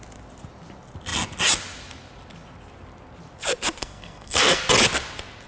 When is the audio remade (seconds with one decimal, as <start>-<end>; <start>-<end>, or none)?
3.8-4.6